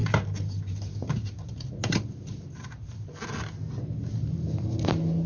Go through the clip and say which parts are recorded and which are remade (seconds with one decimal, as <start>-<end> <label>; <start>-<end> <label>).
0.0-3.2 remade; 3.2-4.2 recorded; 4.2-5.3 remade